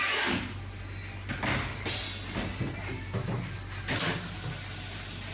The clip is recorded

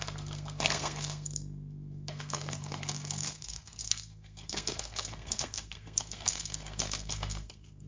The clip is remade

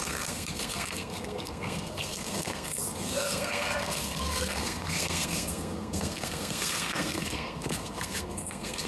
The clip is remade